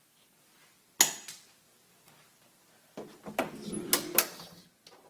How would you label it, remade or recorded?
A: recorded